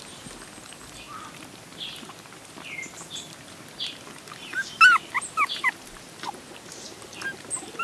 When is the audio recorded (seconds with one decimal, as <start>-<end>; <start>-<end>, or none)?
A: 0.0-7.8